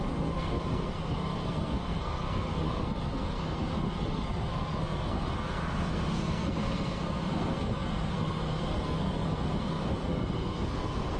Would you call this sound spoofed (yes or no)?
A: yes